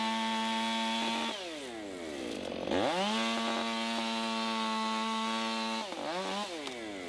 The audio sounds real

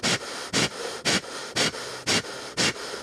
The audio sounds real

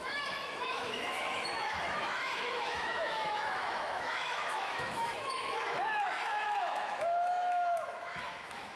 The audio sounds fake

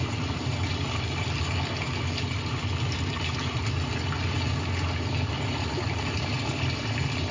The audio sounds real